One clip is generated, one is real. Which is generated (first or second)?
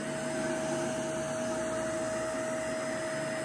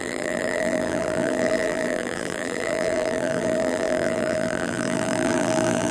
second